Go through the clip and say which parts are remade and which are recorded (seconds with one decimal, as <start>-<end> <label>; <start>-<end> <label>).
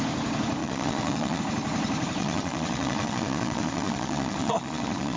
0.0-0.6 recorded; 0.6-1.4 remade; 1.4-2.2 recorded; 2.2-5.2 remade